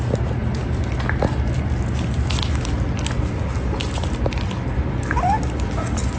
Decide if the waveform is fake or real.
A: real